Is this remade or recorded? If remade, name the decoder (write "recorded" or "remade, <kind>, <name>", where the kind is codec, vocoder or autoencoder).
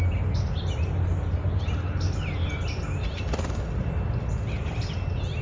recorded